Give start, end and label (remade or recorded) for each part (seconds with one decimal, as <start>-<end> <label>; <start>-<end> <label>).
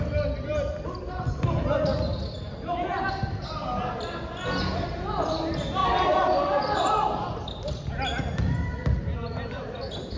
0.0-10.2 recorded